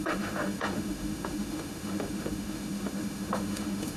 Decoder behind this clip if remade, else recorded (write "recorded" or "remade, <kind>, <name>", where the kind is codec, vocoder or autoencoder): remade, autoencoder, DAC-VAE